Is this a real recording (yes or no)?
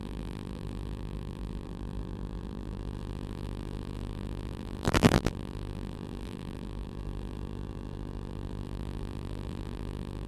no